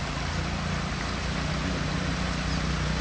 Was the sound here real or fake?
real